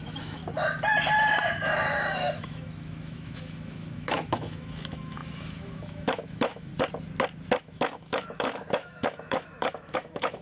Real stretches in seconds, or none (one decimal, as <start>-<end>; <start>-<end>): 0.4-1.9; 6.7-7.6